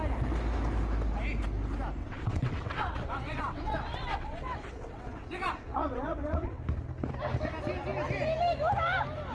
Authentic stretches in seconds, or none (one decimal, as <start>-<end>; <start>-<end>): 0.0-2.0; 6.6-9.3